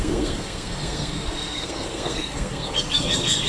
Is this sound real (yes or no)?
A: no